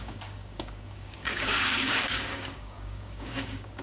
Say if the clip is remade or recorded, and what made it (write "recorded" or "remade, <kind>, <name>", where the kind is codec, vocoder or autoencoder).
remade, codec, DAC